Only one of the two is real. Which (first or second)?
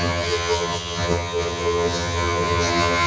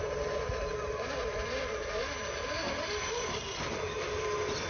second